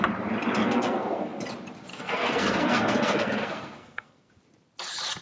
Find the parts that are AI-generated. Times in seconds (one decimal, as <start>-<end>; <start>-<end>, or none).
0.6-1.3; 1.9-4.3